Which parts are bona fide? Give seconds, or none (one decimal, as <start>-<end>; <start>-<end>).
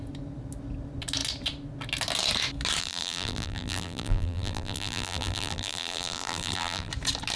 0.0-2.8; 6.9-7.4